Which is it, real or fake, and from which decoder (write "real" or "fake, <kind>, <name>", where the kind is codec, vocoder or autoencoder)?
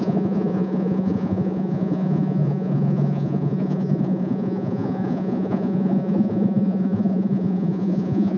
fake, vocoder, Vocos